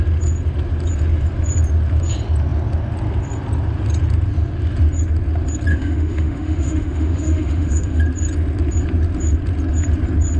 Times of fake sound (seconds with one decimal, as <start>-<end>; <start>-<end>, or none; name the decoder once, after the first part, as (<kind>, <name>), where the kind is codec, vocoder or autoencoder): 5.7-8.0 (autoencoder, DAC-VAE)